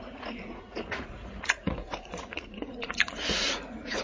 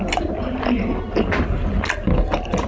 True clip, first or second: second